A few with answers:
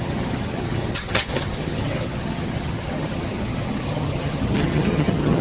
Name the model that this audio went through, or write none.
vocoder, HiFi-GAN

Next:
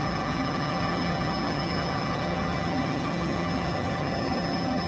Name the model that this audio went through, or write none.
vocoder, HiFi-GAN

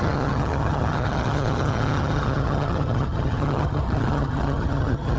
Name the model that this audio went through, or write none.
vocoder, HiFi-GAN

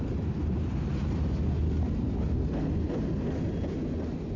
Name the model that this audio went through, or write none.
none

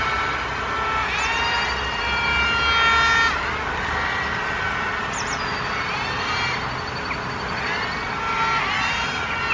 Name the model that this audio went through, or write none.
none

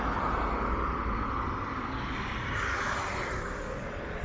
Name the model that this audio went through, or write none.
none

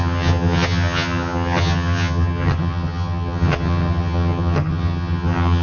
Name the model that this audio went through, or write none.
vocoder, HiFi-GAN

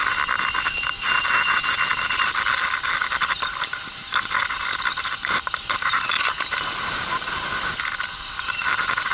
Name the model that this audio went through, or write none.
none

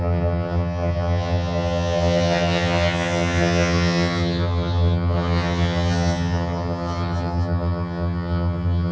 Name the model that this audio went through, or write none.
vocoder, HiFi-GAN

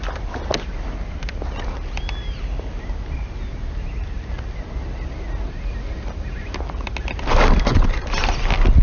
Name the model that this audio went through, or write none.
none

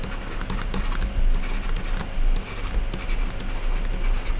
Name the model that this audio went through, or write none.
none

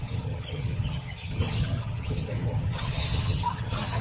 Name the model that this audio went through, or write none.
vocoder, HiFi-GAN